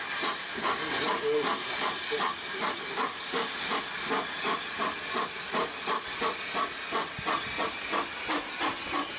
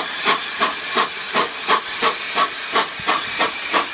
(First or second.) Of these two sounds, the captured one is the first